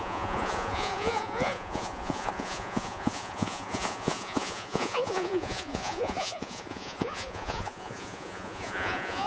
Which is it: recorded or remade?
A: remade